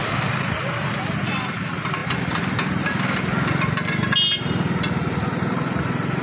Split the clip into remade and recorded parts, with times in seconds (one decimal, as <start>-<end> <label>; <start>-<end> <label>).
0.0-6.2 recorded